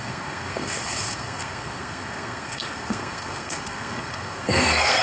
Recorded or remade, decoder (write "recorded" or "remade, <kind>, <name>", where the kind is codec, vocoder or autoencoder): remade, codec, SNAC